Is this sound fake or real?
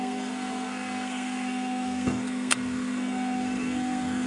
fake